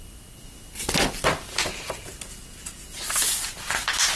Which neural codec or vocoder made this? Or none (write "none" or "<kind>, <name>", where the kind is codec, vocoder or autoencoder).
none